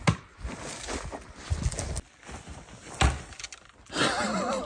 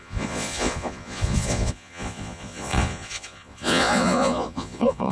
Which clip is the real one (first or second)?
first